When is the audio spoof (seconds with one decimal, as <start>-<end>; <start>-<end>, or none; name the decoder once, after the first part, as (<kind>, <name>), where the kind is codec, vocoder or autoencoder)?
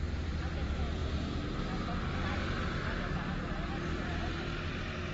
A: none